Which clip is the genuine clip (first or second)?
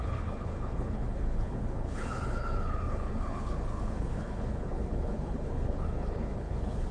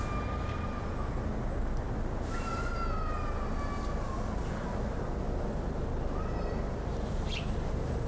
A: second